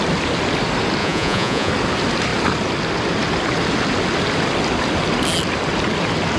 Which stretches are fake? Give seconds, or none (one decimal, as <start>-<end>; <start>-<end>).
1.0-1.7